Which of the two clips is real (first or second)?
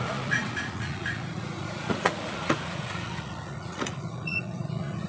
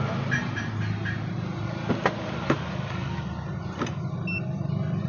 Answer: second